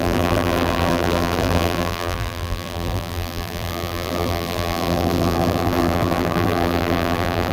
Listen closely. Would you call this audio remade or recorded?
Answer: remade